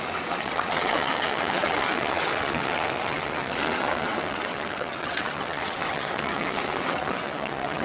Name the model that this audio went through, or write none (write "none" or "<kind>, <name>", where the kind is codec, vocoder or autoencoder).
vocoder, WaveNeXt